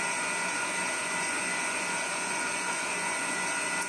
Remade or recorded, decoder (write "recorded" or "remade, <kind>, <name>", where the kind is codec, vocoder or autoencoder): remade, vocoder, Vocos